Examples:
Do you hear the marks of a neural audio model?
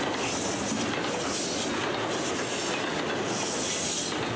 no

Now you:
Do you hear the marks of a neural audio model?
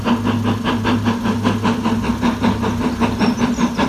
no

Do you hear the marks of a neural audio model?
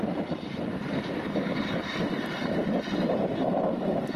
yes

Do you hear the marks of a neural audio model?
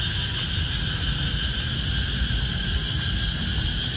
no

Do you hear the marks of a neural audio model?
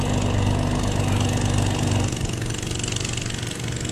no